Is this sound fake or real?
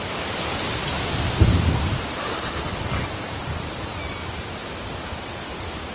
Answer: real